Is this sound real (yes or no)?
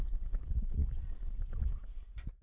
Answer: yes